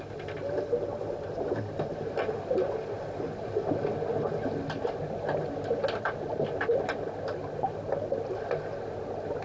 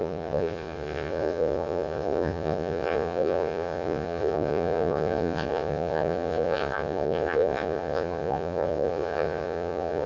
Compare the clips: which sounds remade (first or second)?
second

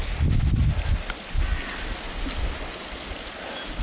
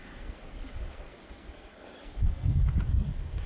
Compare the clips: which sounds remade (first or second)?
second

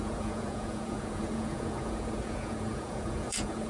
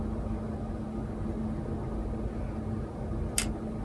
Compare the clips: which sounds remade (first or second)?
first